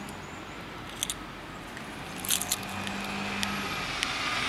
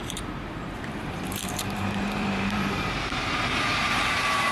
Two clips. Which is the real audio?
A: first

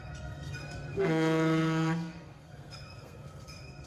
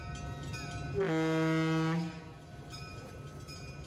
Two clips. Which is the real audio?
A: second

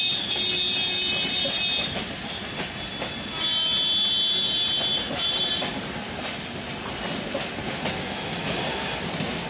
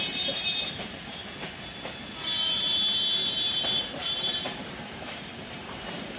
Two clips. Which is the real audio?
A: first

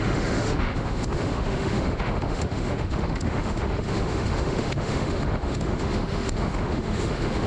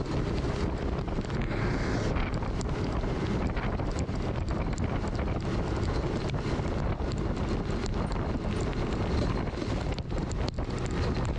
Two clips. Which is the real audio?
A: second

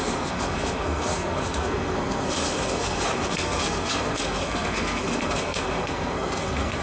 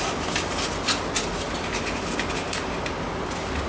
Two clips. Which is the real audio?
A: second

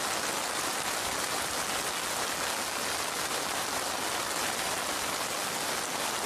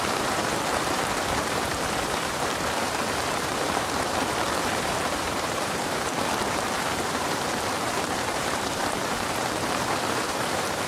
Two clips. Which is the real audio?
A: first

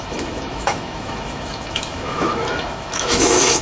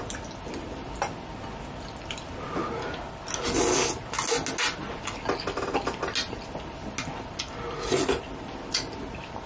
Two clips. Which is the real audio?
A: second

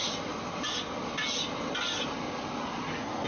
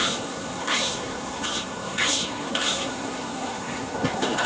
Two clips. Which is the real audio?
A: first